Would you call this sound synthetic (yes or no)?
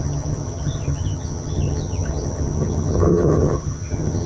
yes